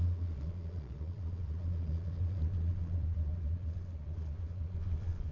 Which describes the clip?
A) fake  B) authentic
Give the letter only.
A